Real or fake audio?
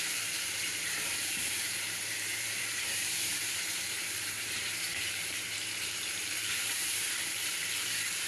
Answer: fake